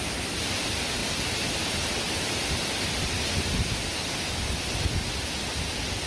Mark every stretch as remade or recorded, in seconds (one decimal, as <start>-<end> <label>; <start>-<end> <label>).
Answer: 0.0-6.1 recorded